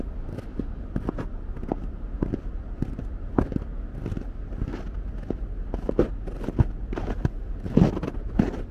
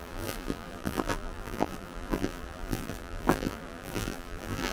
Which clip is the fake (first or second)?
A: second